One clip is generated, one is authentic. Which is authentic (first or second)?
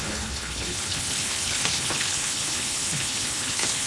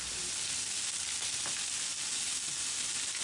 second